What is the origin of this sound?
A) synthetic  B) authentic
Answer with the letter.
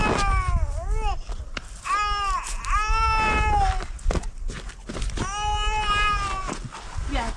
B